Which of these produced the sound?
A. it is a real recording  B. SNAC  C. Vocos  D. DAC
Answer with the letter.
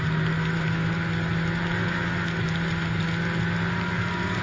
A